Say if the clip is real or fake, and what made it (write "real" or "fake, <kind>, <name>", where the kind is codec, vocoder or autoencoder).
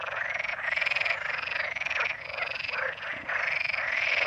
real